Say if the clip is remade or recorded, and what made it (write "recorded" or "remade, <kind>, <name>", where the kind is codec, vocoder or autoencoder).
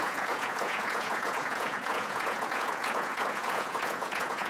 remade, vocoder, Vocos